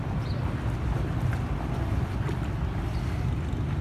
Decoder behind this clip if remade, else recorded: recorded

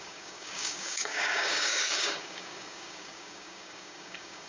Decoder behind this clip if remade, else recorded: remade, codec, DAC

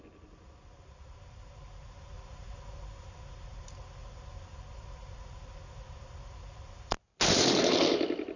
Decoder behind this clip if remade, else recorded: recorded